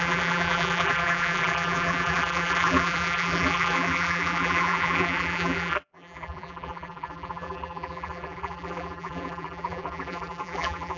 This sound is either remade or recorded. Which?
remade